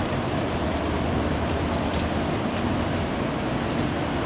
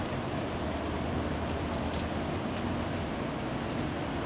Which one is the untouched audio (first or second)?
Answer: second